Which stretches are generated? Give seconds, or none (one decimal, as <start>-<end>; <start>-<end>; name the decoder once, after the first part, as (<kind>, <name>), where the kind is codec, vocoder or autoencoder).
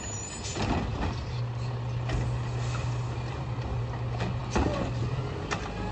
none